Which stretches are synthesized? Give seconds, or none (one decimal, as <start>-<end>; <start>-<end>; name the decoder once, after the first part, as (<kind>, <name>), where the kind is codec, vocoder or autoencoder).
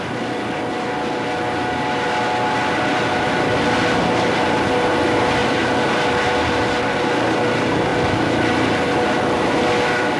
none